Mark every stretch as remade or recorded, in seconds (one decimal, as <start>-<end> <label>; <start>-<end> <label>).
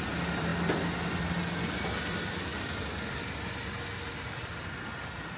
0.0-5.4 recorded